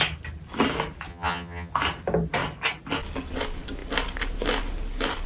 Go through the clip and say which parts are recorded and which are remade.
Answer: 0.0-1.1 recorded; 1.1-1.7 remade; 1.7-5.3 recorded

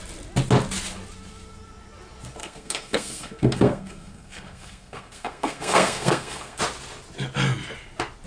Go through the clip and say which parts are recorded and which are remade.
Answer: 0.0-2.4 recorded; 2.4-6.6 remade; 6.6-8.3 recorded

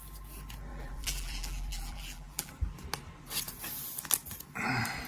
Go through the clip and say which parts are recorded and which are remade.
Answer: 0.0-0.7 recorded; 0.7-2.5 remade; 2.5-5.1 recorded

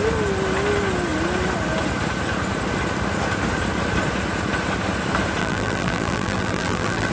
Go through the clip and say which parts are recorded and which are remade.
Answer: 0.0-5.4 recorded; 5.4-7.1 remade

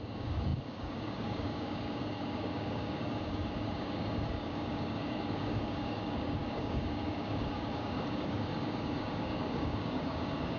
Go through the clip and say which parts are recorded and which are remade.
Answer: 0.0-10.6 remade

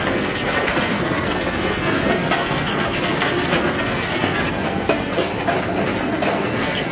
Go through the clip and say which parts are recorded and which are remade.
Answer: 0.0-5.3 remade; 5.3-6.0 recorded; 6.0-6.9 remade